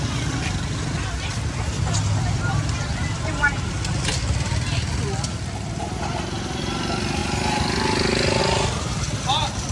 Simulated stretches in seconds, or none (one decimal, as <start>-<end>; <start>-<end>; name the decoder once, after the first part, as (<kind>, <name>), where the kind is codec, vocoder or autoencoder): none